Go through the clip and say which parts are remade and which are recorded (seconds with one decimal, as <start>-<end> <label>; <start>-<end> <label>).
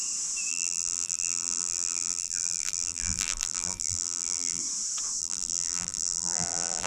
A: 0.0-0.5 recorded; 0.5-4.6 remade; 4.6-5.2 recorded; 5.2-6.9 remade